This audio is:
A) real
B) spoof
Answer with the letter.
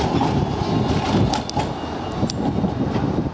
A